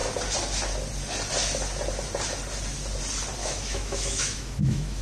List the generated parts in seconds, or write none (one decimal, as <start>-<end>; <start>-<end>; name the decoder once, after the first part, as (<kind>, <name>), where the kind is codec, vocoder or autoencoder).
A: 3.4-5.0 (autoencoder, DAC-VAE)